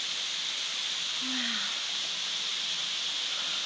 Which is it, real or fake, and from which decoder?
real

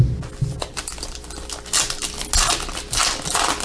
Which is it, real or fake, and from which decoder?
real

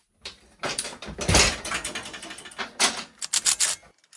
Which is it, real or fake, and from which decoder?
real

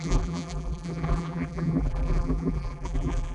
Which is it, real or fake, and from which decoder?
fake, vocoder, BigVGAN v2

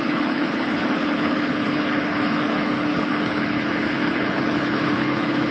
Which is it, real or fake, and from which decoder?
fake, codec, HILCodec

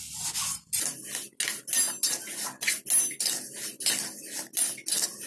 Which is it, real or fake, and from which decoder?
real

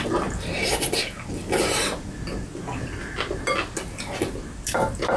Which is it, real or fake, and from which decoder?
real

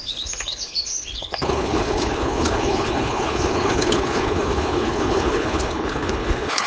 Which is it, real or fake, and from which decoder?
fake, codec, HILCodec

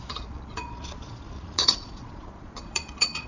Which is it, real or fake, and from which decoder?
fake, vocoder, Vocos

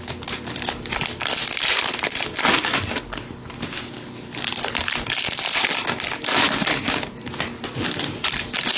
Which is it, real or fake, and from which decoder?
real